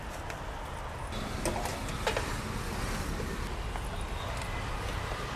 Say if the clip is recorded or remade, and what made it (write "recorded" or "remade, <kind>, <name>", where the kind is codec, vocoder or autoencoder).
recorded